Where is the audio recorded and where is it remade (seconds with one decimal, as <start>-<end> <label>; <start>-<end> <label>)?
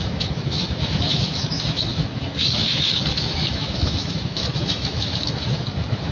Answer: 0.0-6.1 remade